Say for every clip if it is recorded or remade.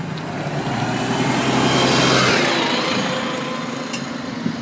recorded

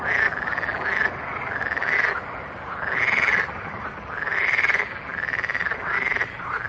recorded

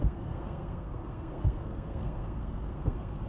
remade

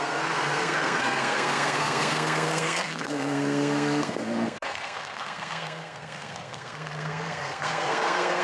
remade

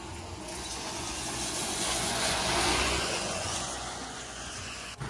remade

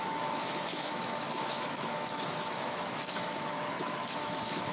remade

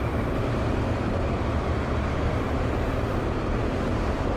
remade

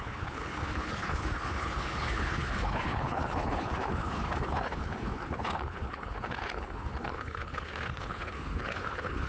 remade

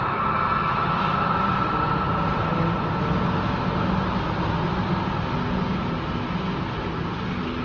recorded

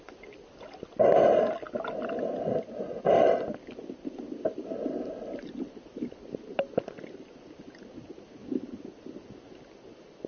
recorded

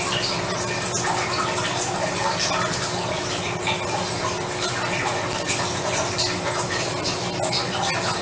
recorded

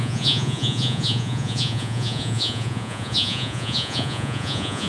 remade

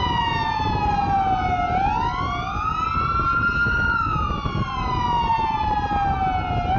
recorded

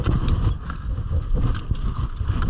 recorded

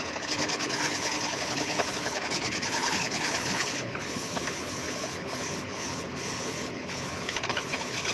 remade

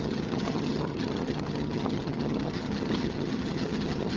remade